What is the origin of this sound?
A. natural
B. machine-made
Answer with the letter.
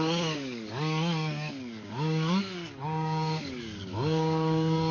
B